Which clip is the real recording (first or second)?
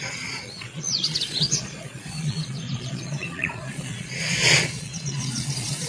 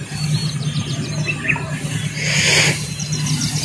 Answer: second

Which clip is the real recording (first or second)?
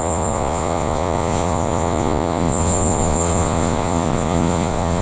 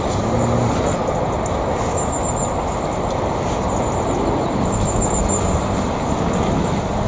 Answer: second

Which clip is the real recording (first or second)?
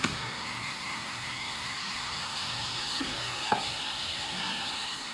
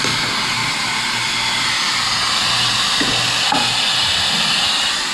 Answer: second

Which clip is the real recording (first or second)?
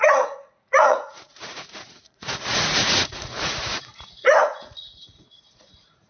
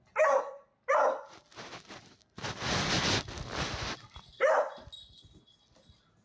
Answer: second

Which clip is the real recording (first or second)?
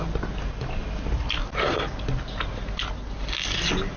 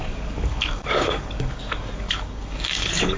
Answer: first